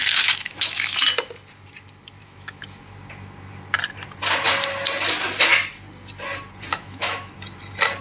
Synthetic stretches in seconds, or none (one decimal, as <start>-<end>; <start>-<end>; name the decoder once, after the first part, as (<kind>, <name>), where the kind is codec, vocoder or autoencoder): 0.0-1.0 (autoencoder, DAC-VAE); 2.2-2.8; 6.7-7.3